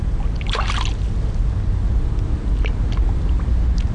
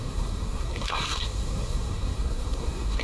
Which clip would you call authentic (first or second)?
first